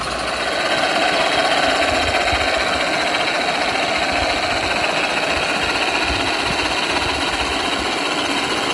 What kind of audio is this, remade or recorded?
recorded